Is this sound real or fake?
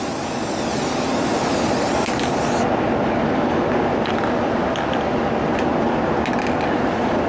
real